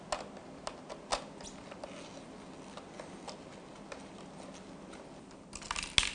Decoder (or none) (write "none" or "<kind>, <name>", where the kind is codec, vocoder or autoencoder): none